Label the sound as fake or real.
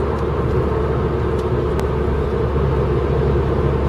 real